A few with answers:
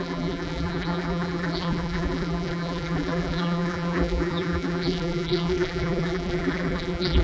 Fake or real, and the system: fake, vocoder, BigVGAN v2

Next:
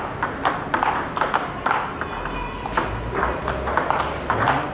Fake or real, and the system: real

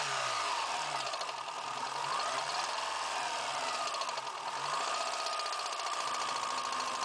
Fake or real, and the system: real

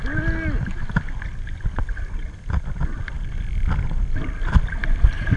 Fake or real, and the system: real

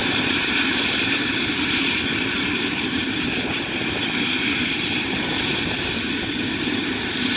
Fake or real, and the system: fake, vocoder, BigVGAN v2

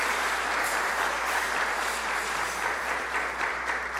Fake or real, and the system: fake, vocoder, BigVGAN v2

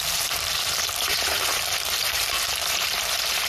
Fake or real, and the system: fake, vocoder, BigVGAN v2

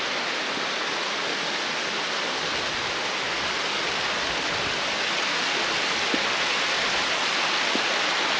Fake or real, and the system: real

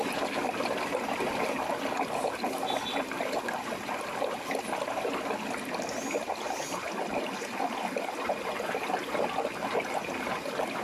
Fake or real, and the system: real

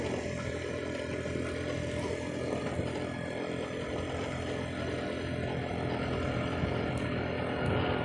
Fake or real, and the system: real